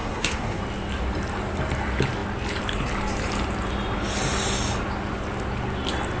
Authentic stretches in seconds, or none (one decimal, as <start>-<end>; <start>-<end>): 0.6-6.2